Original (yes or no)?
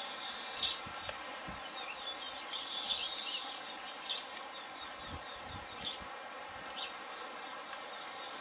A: yes